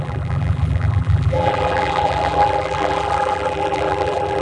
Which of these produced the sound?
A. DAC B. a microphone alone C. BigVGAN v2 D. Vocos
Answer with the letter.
C